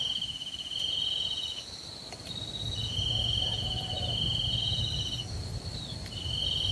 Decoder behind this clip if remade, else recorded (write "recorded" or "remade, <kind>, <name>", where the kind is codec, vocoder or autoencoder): recorded